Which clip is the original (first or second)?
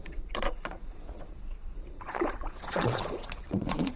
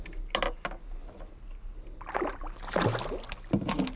second